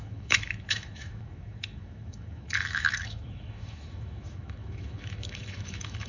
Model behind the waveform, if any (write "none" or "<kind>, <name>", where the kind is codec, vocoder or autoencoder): autoencoder, DAC-VAE